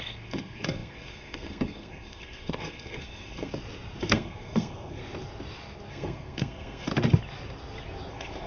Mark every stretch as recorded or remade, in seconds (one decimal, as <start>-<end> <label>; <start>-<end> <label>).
0.0-3.5 remade; 3.5-4.0 recorded; 4.0-5.0 remade; 5.0-5.9 recorded; 5.9-6.9 remade; 6.9-8.1 recorded; 8.1-8.5 remade